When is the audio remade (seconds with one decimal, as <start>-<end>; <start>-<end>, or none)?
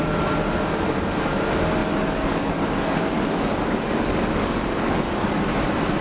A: 1.8-5.4